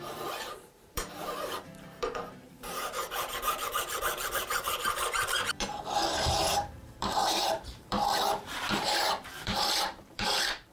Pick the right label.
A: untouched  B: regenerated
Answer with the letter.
B